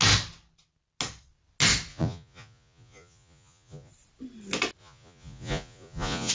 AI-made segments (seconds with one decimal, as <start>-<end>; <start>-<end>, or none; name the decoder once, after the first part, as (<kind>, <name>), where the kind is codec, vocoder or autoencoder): 1.9-3.9 (vocoder, Vocos); 4.8-6.3